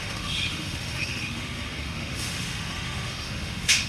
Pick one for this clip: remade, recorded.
remade